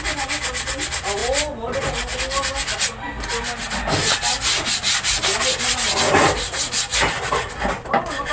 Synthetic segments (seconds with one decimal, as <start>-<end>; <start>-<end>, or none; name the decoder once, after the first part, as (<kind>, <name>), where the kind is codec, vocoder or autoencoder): none